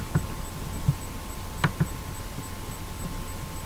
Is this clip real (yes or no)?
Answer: yes